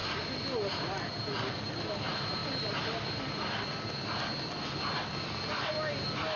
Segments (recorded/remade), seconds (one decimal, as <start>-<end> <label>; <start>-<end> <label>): 0.0-6.4 recorded

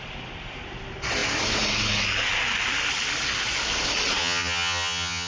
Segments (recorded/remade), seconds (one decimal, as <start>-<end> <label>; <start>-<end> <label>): 0.0-4.2 recorded; 4.2-5.3 remade

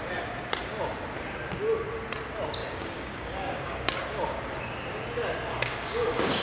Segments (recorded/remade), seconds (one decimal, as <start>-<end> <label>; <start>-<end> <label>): 0.0-2.6 recorded; 2.6-3.8 remade; 3.8-5.5 recorded; 5.5-6.4 remade

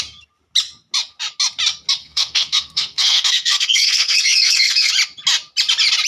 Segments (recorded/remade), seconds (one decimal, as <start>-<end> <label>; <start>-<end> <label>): 0.0-2.0 recorded; 2.0-4.9 remade; 4.9-6.1 recorded

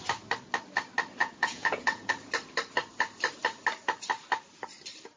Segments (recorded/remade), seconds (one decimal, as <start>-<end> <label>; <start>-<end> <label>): 0.0-1.2 recorded; 1.2-2.1 remade; 2.1-5.2 recorded

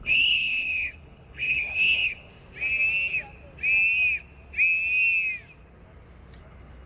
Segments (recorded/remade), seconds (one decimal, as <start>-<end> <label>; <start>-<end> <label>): 0.0-2.3 remade; 2.3-6.4 recorded; 6.4-6.9 remade

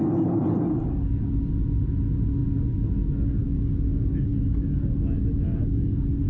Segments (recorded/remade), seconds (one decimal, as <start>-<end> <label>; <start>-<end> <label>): 0.0-6.3 recorded

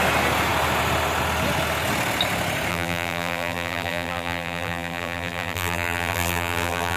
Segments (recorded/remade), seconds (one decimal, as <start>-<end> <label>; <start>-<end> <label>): 0.0-2.7 recorded; 2.7-7.0 remade